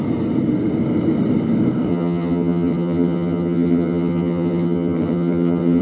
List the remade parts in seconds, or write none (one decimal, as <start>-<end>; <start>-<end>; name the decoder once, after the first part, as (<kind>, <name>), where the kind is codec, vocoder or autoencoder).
1.9-5.8 (vocoder, HiFi-GAN)